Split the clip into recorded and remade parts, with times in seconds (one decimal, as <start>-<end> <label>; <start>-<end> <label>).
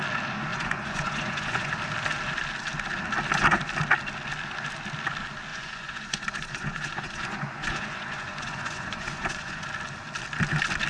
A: 0.0-0.5 recorded; 0.5-1.7 remade; 1.7-5.5 recorded; 5.5-9.6 remade; 9.6-10.9 recorded